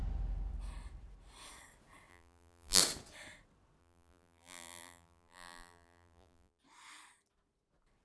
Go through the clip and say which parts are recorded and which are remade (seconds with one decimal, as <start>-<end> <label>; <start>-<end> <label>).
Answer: 0.0-2.1 recorded; 2.1-2.8 remade; 2.8-3.8 recorded; 3.8-6.6 remade; 6.6-8.0 recorded